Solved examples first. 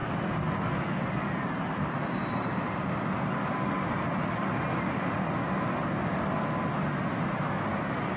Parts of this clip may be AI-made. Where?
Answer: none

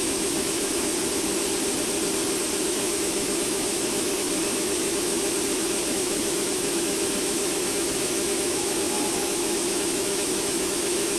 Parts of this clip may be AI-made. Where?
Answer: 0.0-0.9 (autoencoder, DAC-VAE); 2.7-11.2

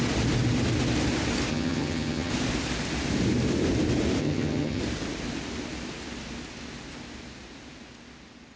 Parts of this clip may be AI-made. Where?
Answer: 1.5-2.3 (vocoder, HiFi-GAN); 4.2-4.8